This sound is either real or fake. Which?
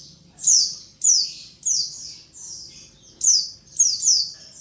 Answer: real